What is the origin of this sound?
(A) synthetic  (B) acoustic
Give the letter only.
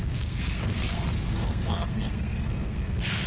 A